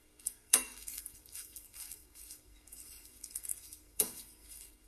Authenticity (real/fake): fake